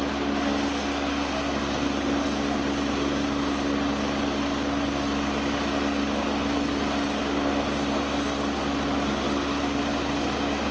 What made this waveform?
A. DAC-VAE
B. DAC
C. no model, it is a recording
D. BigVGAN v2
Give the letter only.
C